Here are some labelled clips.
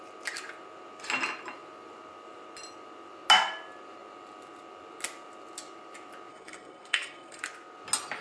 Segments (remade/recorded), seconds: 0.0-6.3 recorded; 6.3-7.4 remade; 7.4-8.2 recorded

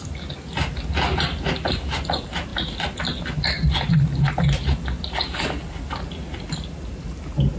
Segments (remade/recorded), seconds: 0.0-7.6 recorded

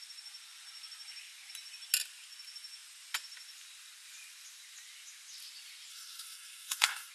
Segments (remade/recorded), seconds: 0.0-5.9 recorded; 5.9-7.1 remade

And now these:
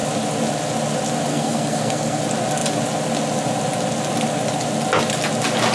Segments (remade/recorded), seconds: 0.0-1.3 recorded; 1.3-2.2 remade; 2.2-5.7 recorded